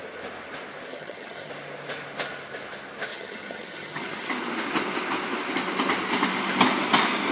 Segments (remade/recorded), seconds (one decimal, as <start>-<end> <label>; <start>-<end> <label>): 0.0-0.9 recorded; 0.9-1.5 remade; 1.5-3.1 recorded; 3.1-4.3 remade; 4.3-7.3 recorded

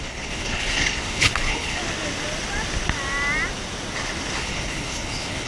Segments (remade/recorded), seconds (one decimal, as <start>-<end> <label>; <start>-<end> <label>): 0.0-1.8 remade; 1.8-4.4 recorded; 4.4-5.5 remade

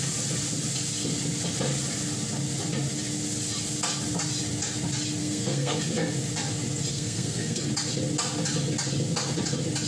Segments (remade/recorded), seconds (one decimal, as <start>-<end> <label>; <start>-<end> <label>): 0.0-5.2 recorded; 5.2-5.8 remade; 5.8-6.9 recorded; 6.9-7.6 remade; 7.6-9.9 recorded

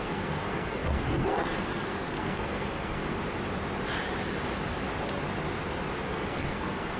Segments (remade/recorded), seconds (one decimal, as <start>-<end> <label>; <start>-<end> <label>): 0.0-3.2 remade; 3.2-6.1 recorded; 6.1-7.0 remade

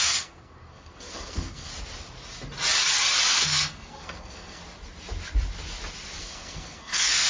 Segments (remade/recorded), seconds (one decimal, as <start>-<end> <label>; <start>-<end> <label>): 0.0-1.7 remade; 1.7-3.3 recorded; 3.3-4.6 remade; 4.6-6.2 recorded; 6.2-7.3 remade

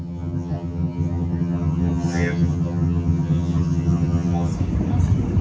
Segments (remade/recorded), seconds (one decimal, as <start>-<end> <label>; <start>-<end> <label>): 0.0-4.5 remade; 4.5-5.4 recorded